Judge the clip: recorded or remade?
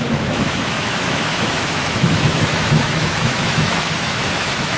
remade